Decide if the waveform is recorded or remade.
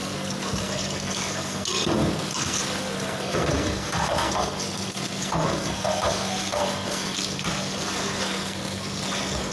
remade